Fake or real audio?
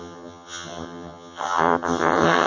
fake